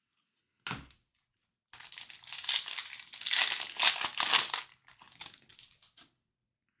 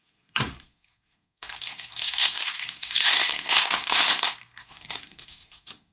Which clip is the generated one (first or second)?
second